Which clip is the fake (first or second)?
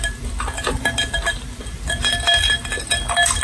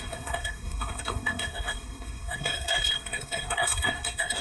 second